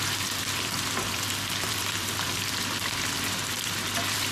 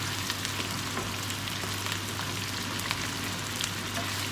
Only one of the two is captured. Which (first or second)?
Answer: second